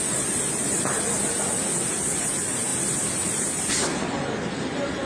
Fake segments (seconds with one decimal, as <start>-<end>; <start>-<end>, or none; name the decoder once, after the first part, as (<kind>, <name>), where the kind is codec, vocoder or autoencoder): 2.7-3.4 (vocoder, BigVGAN v2)